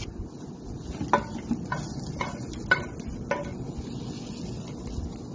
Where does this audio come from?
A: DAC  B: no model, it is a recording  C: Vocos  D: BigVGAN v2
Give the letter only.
B